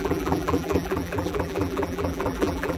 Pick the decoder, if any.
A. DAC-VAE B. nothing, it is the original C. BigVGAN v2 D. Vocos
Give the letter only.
C